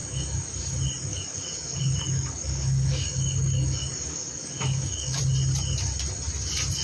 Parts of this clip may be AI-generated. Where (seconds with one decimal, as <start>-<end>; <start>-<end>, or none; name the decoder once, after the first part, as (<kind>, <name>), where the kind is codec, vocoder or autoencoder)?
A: 0.0-0.6 (codec, DAC); 1.1-5.2